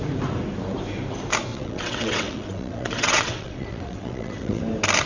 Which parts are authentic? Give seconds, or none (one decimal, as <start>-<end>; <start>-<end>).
0.0-1.5; 4.6-5.1